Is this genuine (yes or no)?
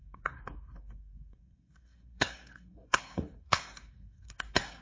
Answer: no